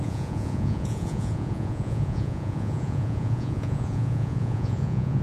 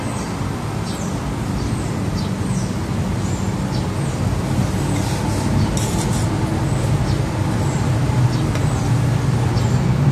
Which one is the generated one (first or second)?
first